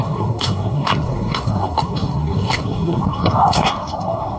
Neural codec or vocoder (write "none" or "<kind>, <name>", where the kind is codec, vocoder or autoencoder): codec, SNAC